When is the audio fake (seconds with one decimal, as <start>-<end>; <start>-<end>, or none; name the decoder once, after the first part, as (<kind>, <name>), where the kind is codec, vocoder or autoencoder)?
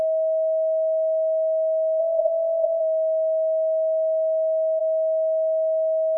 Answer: 2.0-2.8 (codec, SNAC)